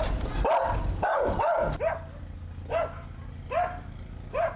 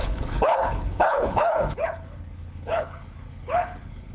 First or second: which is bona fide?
first